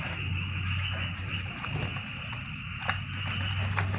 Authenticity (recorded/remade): recorded